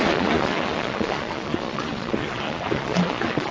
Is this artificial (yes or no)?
yes